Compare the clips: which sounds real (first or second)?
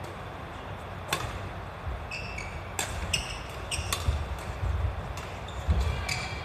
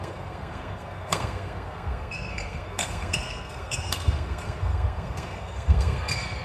first